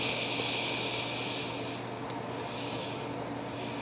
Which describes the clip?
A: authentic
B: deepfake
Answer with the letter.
A